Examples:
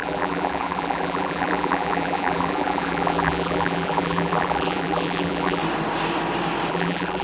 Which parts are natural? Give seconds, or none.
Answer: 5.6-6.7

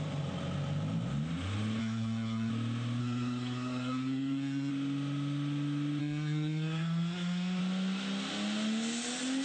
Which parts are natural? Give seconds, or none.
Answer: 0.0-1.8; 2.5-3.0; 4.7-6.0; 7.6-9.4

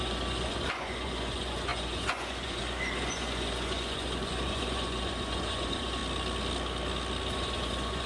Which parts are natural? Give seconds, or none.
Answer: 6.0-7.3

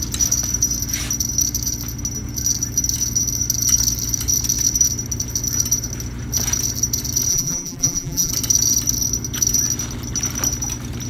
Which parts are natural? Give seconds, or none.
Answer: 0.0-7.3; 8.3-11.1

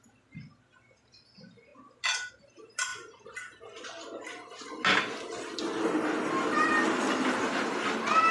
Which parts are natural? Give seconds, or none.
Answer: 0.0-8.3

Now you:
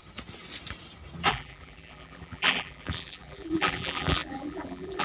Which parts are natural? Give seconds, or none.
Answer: 0.0-1.3

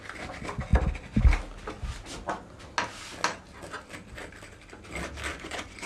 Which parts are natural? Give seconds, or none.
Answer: 0.0-5.3

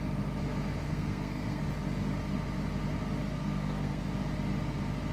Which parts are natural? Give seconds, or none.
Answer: 0.0-0.9; 1.6-3.3; 4.0-5.1